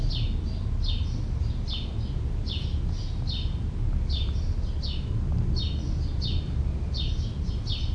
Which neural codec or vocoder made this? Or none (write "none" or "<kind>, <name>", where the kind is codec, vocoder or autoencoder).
none